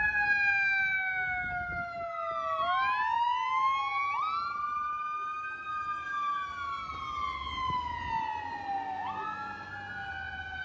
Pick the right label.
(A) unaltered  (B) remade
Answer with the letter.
A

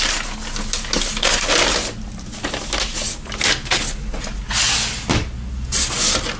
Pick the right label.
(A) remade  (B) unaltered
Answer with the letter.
B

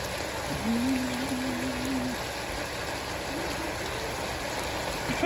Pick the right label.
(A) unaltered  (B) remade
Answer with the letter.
A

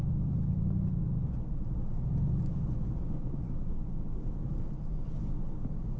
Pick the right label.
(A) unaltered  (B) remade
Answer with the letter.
A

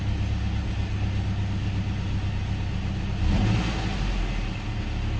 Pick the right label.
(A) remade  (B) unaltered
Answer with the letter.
B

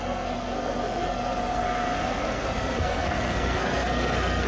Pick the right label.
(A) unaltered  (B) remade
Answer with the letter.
B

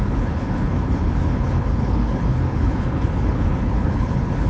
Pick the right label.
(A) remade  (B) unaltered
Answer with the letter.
A